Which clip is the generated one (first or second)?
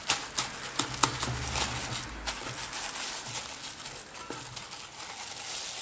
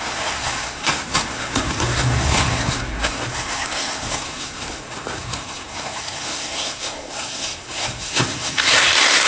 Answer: second